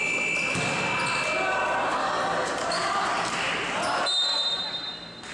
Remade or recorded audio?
recorded